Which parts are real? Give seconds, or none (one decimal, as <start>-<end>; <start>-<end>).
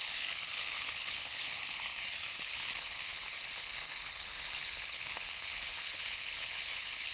1.9-2.4